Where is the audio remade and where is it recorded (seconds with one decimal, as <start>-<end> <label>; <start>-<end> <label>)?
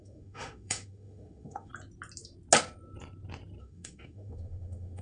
0.0-1.7 remade; 1.7-3.6 recorded; 3.6-5.0 remade